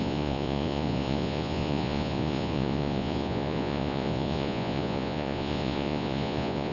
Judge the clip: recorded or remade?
remade